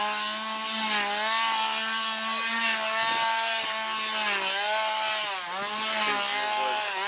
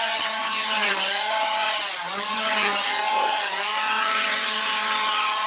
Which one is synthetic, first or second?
second